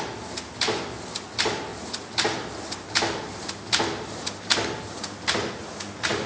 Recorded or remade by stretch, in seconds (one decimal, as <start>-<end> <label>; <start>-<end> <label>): 0.0-6.3 recorded